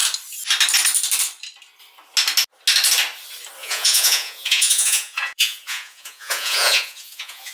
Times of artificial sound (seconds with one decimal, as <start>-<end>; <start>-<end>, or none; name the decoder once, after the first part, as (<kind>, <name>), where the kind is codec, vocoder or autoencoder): 3.6-7.5 (vocoder, Vocos)